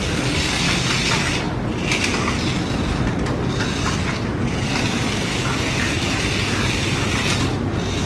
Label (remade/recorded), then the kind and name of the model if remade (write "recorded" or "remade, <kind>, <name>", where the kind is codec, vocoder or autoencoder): recorded